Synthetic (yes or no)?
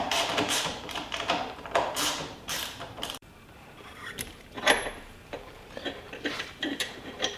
yes